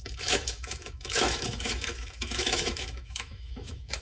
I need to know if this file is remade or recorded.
remade